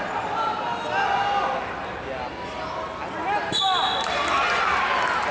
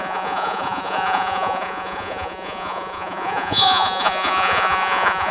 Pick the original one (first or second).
first